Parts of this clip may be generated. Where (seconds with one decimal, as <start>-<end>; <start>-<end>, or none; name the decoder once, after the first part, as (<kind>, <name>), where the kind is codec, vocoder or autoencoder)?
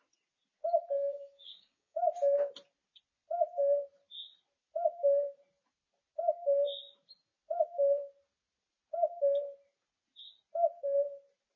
1.0-2.1 (codec, DAC)